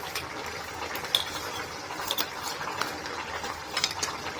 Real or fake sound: real